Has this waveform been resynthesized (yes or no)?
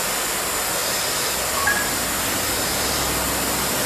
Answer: no